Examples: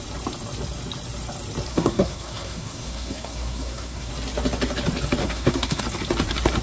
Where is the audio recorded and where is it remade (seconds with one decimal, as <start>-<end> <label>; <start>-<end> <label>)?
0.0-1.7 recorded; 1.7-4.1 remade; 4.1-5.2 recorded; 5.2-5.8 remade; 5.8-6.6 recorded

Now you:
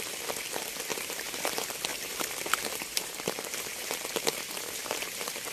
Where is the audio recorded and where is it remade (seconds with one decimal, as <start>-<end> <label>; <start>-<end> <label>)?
0.0-0.9 recorded; 0.9-1.5 remade; 1.5-1.9 recorded; 1.9-5.5 remade

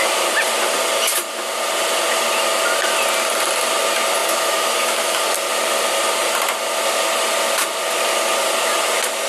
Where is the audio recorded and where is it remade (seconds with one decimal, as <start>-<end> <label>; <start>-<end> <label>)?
0.0-4.2 recorded; 4.2-5.2 remade; 5.2-9.3 recorded

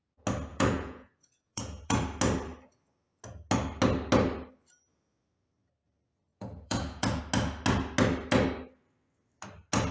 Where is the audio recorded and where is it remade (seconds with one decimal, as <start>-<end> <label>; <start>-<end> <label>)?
0.0-0.5 recorded; 0.5-2.0 remade; 2.0-6.3 recorded; 6.3-7.2 remade; 7.2-9.9 recorded

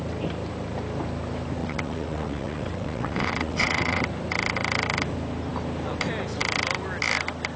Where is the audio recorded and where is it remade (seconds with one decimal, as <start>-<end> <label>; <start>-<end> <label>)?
0.0-1.6 recorded; 1.6-4.0 remade; 4.0-7.6 recorded

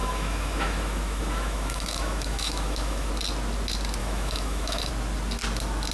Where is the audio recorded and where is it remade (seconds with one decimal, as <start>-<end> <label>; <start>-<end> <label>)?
0.0-3.1 remade; 3.1-4.0 recorded; 4.0-4.9 remade; 4.9-5.9 recorded